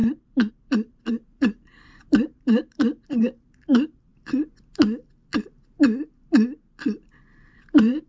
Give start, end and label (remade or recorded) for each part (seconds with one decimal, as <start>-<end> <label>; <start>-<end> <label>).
0.0-4.1 remade; 4.1-7.5 recorded; 7.5-8.1 remade